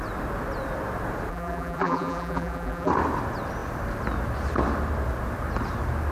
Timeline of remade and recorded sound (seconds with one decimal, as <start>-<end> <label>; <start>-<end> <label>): 0.0-1.3 recorded; 1.3-2.9 remade; 2.9-6.1 recorded